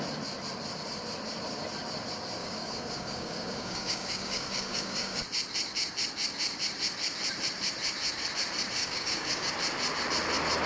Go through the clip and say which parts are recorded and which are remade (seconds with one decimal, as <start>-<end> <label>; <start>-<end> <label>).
0.0-2.4 recorded; 2.4-5.2 remade; 5.2-8.8 recorded; 8.8-9.5 remade; 9.5-10.7 recorded